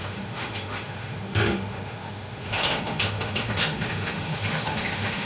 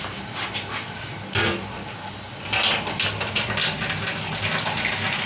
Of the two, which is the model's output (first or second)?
first